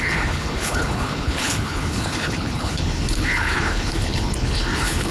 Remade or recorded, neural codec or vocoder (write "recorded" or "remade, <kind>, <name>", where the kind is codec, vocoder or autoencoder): remade, codec, HILCodec